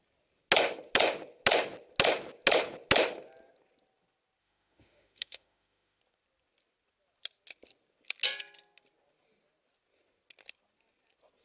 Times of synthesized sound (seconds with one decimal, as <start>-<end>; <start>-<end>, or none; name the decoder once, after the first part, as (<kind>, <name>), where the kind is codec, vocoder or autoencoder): 4.4-6.0 (autoencoder, DAC-VAE)